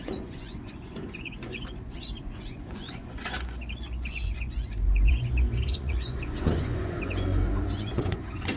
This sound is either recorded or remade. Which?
remade